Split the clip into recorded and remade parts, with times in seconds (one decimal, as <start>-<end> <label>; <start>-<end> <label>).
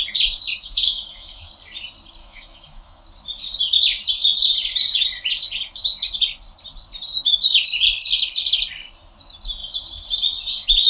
0.0-0.5 recorded; 0.5-1.5 remade; 1.5-2.2 recorded; 2.2-3.0 remade; 3.0-10.9 recorded